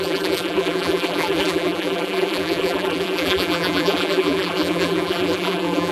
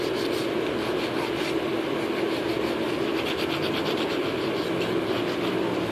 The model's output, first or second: first